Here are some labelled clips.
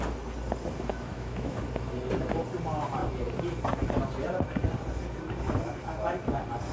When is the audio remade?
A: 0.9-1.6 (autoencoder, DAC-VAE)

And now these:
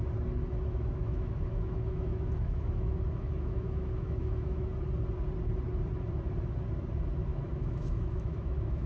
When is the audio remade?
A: 0.7-4.7 (autoencoder, DAC-VAE); 7.3-8.9

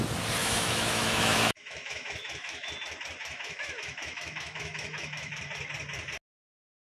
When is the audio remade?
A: 0.4-2.7 (autoencoder, DAC-VAE); 3.2-5.4

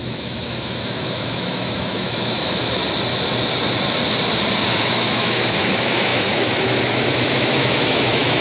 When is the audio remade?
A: 0.0-2.8 (autoencoder, DAC-VAE); 4.8-8.4

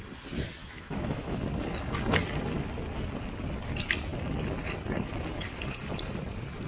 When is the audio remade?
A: 0.6-1.4 (autoencoder, DAC-VAE)

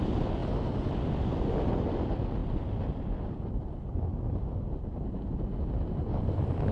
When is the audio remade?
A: none

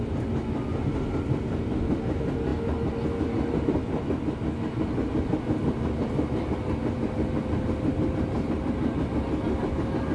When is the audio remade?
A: none

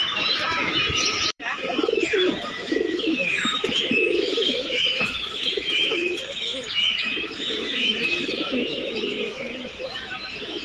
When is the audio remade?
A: 0.0-10.6 (autoencoder, DAC-VAE)